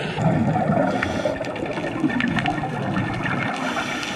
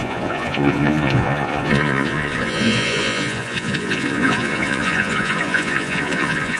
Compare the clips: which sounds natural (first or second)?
first